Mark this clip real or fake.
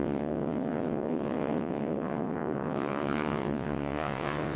fake